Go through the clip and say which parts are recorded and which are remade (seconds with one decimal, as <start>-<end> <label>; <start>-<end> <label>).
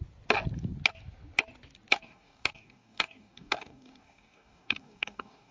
0.0-1.9 recorded; 1.9-5.5 remade